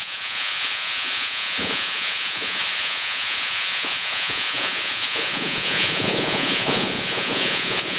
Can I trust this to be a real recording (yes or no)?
no